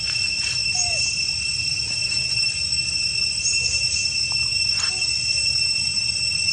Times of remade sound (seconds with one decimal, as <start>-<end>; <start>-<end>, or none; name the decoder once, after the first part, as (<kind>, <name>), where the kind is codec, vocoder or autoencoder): none